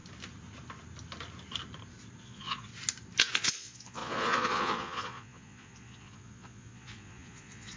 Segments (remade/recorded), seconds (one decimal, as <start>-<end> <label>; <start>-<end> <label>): 0.0-2.2 recorded; 2.2-2.7 remade; 2.7-3.3 recorded; 3.3-7.8 remade